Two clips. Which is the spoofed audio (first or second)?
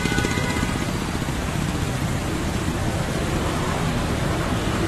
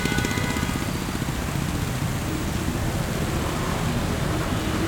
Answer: first